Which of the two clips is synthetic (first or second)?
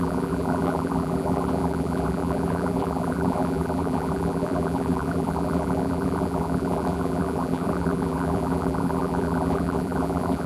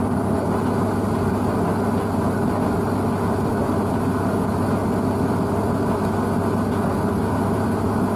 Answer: first